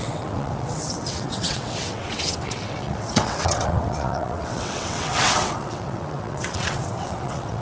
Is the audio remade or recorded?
remade